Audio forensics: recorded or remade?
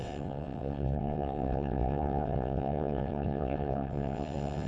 remade